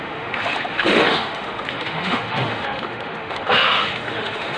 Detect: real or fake fake